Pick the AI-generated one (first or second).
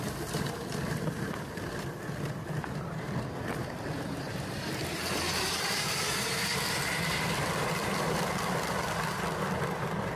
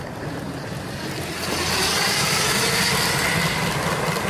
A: first